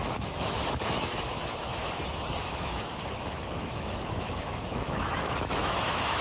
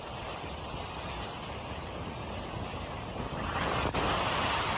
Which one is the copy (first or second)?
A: first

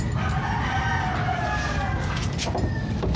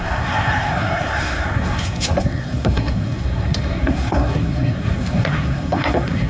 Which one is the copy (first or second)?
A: second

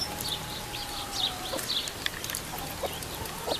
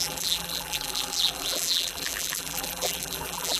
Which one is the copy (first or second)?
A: second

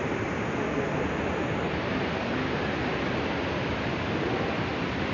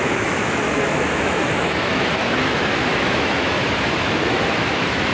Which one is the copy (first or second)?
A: second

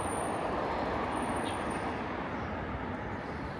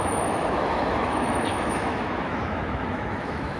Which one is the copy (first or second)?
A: second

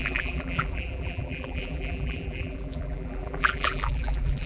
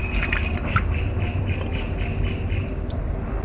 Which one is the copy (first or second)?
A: first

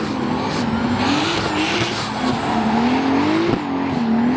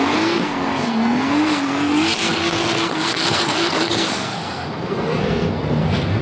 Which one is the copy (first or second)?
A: second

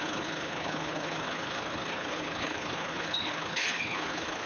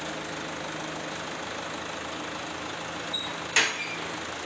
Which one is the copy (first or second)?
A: first